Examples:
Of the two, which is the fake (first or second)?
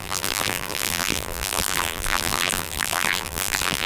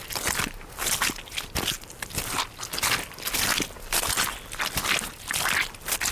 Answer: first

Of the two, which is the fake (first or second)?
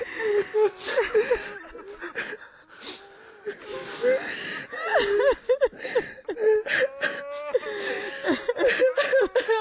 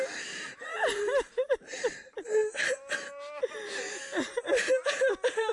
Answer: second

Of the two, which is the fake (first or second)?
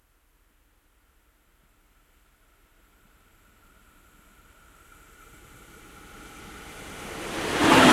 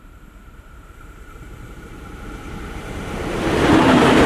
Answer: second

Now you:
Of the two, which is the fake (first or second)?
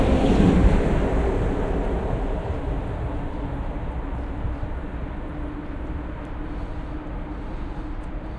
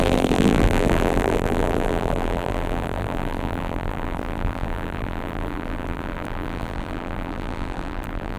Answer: second